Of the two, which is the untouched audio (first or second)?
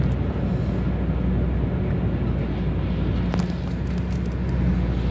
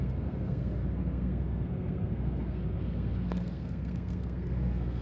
first